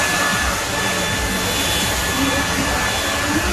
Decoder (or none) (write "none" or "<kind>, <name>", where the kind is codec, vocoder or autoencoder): none